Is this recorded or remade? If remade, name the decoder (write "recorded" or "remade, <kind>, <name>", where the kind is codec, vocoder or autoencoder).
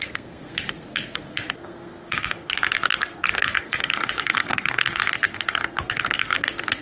remade, codec, SNAC